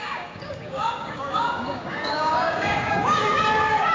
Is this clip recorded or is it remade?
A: remade